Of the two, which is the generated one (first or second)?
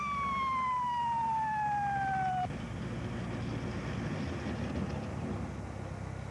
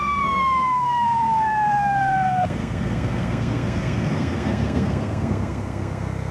second